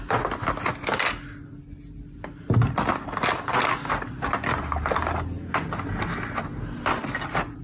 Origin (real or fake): real